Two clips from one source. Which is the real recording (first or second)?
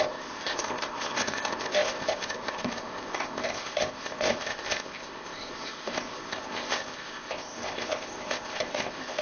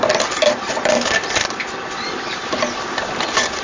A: second